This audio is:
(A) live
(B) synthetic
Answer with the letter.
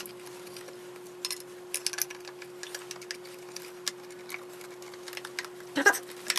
A